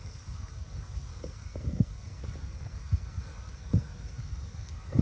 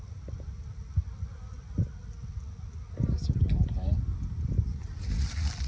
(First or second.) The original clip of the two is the second